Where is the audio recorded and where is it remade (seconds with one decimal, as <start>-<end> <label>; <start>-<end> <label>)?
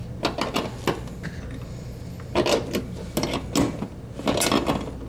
0.0-5.1 recorded